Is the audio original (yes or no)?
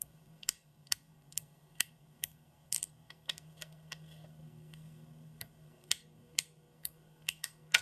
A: no